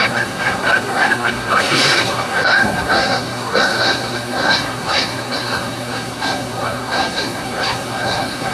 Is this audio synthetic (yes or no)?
yes